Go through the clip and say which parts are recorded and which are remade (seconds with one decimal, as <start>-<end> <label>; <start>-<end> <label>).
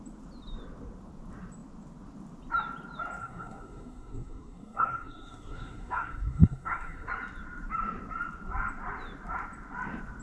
0.0-3.2 recorded; 3.2-7.1 remade; 7.1-10.2 recorded